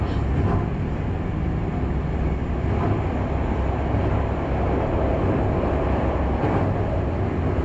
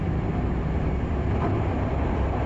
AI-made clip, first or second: second